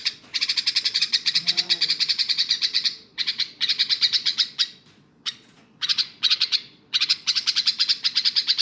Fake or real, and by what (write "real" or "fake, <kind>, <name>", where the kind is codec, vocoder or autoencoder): fake, vocoder, Vocos